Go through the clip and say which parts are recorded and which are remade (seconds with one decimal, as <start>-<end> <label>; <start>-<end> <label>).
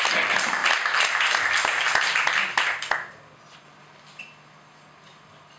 0.0-5.6 recorded